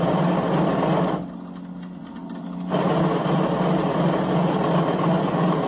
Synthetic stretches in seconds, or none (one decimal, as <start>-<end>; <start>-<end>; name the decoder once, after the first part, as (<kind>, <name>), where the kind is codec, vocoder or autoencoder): none